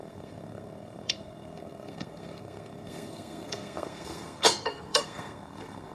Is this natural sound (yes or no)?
no